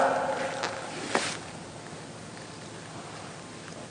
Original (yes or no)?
yes